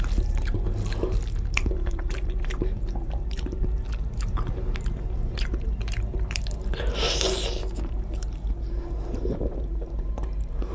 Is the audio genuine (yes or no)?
no